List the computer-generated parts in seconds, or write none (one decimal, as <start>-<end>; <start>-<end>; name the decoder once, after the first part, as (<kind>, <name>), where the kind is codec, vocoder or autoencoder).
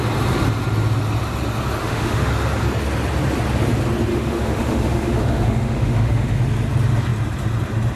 1.8-2.3 (autoencoder, DAC-VAE); 4.1-6.4